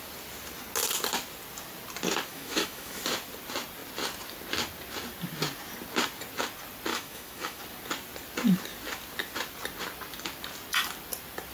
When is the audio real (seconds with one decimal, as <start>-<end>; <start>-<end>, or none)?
0.0-2.3; 3.0-6.9; 7.6-11.5